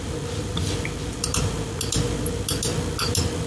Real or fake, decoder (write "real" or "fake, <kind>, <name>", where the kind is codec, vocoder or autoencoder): real